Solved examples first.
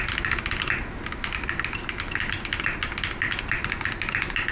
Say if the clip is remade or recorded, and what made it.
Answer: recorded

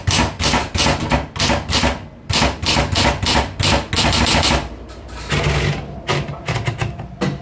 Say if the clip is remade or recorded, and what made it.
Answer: recorded